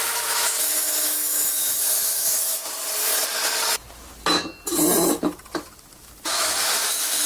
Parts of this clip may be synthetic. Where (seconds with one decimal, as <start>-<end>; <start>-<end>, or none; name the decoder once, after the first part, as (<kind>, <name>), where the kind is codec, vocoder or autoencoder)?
0.0-2.6 (autoencoder, DAC-VAE); 6.0-7.3